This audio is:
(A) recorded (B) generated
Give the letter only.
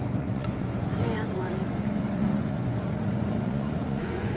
B